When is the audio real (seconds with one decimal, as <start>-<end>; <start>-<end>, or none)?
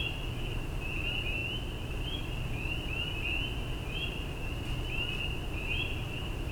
0.0-6.5